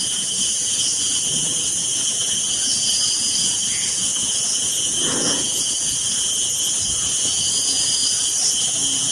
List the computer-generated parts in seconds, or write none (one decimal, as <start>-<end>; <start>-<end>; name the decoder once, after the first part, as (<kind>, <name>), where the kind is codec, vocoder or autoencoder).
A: 0.0-8.0 (vocoder, Vocos); 8.5-9.1